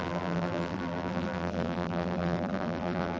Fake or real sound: fake